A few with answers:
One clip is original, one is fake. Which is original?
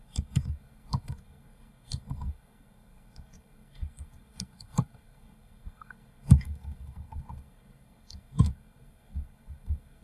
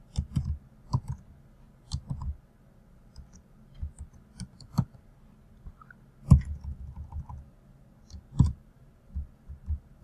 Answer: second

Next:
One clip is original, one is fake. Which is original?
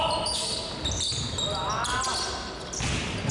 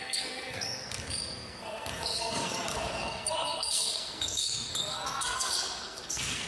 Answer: first